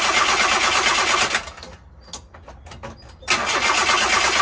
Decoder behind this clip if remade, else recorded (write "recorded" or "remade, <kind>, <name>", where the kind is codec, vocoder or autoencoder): recorded